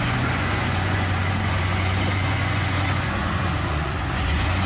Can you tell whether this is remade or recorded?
remade